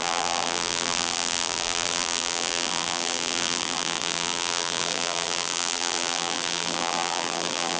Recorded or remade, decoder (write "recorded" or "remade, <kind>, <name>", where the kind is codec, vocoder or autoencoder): remade, vocoder, BigVGAN v2